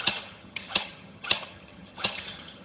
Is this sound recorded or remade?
remade